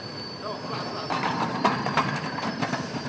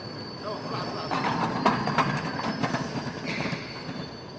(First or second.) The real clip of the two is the second